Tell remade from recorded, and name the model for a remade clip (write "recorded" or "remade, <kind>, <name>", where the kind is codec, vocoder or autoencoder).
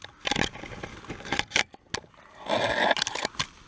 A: recorded